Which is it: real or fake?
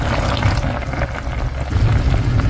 real